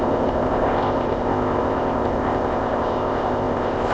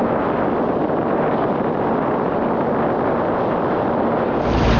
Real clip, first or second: second